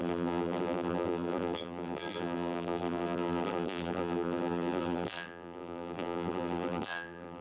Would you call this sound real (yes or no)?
no